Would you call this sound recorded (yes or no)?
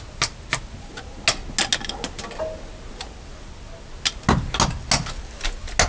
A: yes